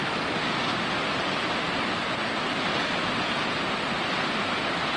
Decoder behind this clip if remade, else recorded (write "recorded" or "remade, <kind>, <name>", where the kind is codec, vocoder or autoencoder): recorded